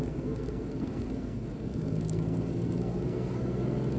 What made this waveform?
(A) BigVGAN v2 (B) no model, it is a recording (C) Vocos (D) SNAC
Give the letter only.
D